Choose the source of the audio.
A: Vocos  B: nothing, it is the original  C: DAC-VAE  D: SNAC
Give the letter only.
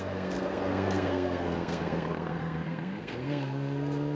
D